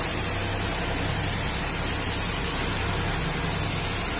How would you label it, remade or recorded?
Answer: recorded